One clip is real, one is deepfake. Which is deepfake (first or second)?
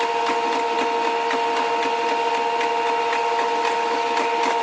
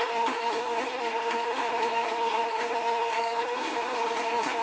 second